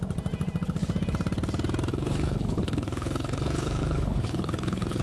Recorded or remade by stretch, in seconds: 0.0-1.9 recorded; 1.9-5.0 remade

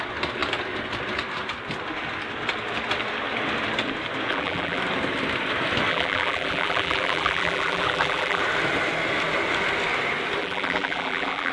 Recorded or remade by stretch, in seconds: 0.0-4.3 recorded; 4.3-4.8 remade; 4.8-5.9 recorded; 5.9-8.4 remade; 8.4-10.4 recorded; 10.4-11.5 remade

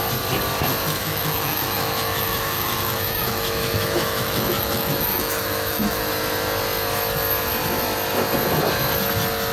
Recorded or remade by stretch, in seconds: 0.0-1.0 recorded; 1.0-6.0 remade; 6.0-9.5 recorded